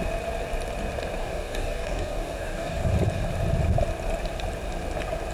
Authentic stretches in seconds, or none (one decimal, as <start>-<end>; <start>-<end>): 0.0-1.2; 2.9-5.3